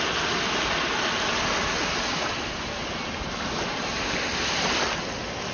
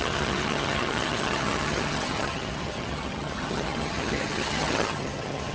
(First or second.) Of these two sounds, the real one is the first